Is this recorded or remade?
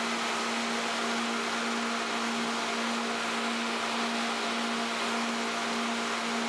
recorded